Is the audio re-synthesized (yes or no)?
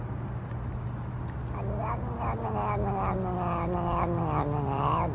no